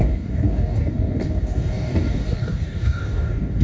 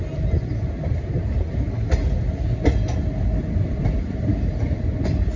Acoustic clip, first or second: second